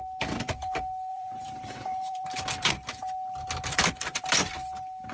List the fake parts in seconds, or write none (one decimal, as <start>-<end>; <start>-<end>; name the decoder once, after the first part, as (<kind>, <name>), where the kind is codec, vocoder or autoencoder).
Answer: 1.1-2.7 (vocoder, BigVGAN v2); 3.7-4.5

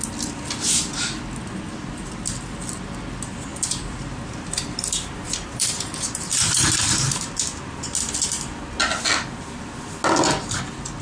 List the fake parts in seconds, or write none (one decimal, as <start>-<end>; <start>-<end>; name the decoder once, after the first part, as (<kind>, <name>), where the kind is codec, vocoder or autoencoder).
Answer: 3.5-7.3 (vocoder, BigVGAN v2)

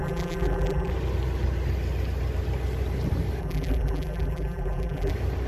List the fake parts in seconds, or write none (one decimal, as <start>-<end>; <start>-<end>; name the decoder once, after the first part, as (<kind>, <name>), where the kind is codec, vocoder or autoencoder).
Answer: 0.0-0.9 (vocoder, BigVGAN v2); 3.4-5.1

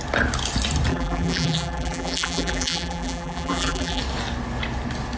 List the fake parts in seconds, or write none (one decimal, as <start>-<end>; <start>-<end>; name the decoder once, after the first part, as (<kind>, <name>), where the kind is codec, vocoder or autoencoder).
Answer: 0.9-4.0 (vocoder, BigVGAN v2)

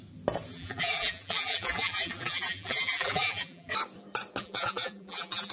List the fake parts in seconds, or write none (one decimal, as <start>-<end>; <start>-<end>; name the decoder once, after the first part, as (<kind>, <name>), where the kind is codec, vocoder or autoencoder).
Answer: 0.5-3.7 (vocoder, BigVGAN v2); 4.4-5.5

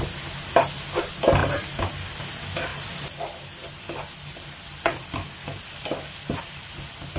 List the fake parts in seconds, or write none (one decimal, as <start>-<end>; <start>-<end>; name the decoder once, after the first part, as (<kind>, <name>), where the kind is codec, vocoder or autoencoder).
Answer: 1.4-2.2 (vocoder, BigVGAN v2); 2.7-6.6